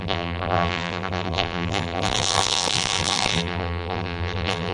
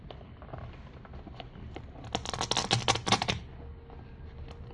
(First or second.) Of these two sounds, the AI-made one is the first